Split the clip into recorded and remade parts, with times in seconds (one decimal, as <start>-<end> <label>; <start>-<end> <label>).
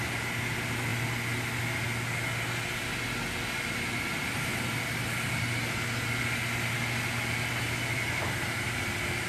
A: 0.0-9.3 recorded